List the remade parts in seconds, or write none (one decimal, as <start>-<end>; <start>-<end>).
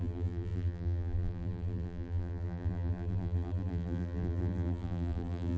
0.0-5.6